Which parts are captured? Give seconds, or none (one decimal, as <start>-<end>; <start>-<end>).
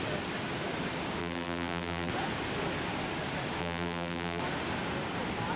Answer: 0.0-1.2; 2.1-3.6; 4.4-5.6